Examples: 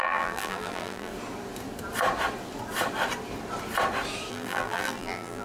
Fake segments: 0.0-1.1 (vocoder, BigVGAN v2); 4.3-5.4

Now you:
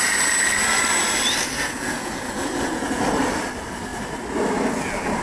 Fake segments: 1.4-3.0 (vocoder, Vocos)

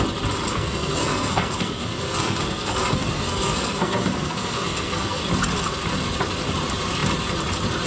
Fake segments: 0.5-5.2 (codec, SNAC)

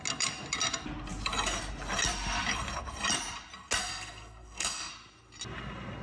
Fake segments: 3.8-4.9 (codec, SNAC)

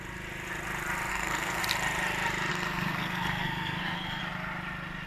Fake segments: 1.1-1.6 (codec, SNAC); 2.5-4.2

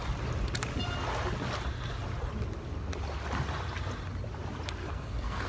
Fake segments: 4.8-5.5 (codec, SNAC)

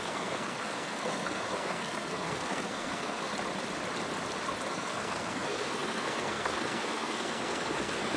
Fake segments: 0.0-3.3 (codec, SNAC); 4.7-8.2

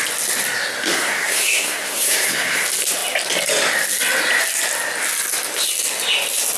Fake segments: 0.9-2.6 (codec, SNAC)